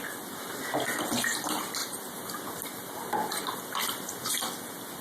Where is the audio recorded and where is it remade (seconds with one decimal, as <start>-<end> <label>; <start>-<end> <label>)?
0.0-5.0 recorded